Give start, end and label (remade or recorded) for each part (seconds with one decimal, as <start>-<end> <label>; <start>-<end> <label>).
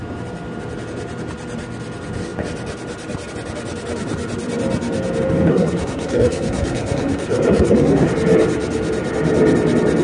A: 0.0-5.5 recorded; 5.5-8.1 remade; 8.1-10.0 recorded